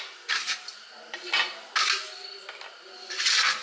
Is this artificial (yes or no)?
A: no